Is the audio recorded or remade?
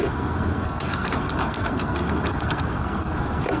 remade